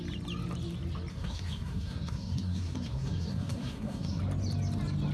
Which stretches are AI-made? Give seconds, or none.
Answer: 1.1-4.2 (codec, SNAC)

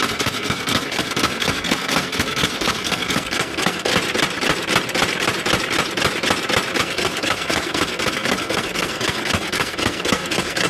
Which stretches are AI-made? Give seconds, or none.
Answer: 0.0-3.9 (codec, SNAC); 6.8-10.7

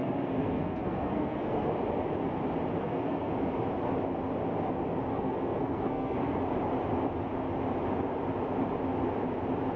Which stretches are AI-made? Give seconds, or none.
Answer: 0.0-1.7 (codec, SNAC); 2.8-3.3; 5.1-6.4

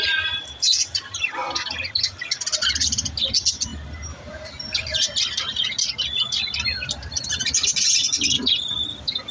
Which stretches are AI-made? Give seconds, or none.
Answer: none

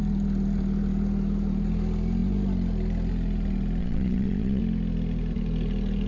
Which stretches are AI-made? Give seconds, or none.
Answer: 3.8-4.6 (vocoder, Vocos)

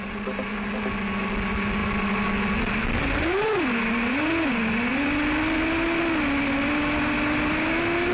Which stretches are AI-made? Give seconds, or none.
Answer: none

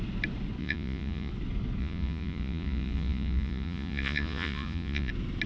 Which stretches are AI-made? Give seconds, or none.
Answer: 0.6-1.3 (vocoder, Vocos); 1.8-5.1